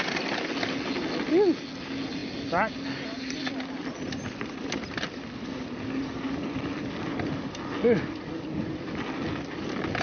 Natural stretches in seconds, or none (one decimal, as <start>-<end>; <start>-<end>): 0.0-2.2; 6.9-10.0